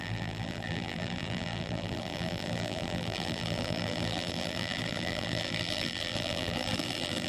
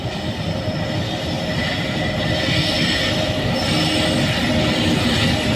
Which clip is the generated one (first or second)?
first